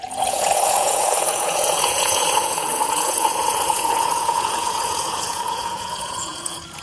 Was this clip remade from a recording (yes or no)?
yes